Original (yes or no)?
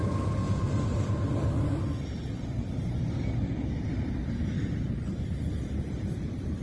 yes